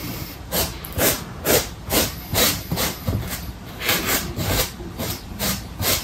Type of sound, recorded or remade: remade